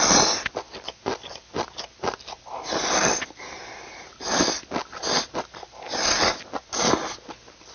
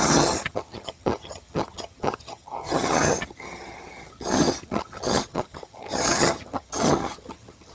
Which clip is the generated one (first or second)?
second